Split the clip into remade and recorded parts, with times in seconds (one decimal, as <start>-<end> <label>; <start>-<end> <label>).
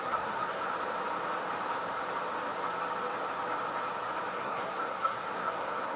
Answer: 0.0-0.7 remade; 0.7-4.3 recorded; 4.3-6.0 remade